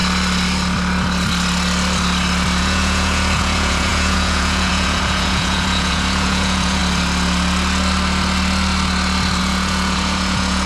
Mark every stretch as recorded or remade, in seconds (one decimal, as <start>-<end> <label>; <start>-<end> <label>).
0.0-2.6 recorded; 2.6-6.8 remade; 6.8-9.4 recorded; 9.4-10.7 remade